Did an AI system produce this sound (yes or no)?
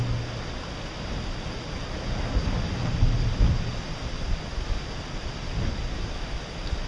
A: no